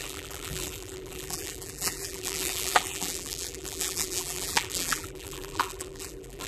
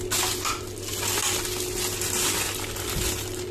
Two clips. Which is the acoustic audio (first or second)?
second